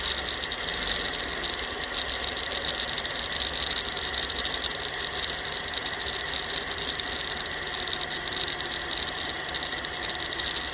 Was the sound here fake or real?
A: real